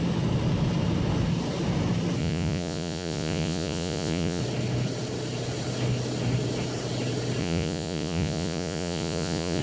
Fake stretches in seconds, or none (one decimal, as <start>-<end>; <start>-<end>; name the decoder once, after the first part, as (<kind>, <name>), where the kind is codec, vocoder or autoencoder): 2.2-4.4 (vocoder, Vocos); 7.4-9.6